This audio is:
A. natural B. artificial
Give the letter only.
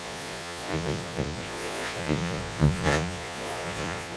B